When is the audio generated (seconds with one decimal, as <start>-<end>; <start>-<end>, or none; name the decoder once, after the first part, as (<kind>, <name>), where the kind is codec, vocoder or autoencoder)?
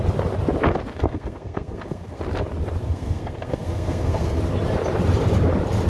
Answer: 0.9-2.2 (codec, SNAC); 2.8-4.4